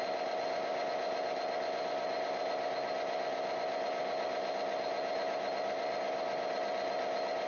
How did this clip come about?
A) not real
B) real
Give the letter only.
B